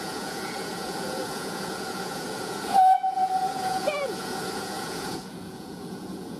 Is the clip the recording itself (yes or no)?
no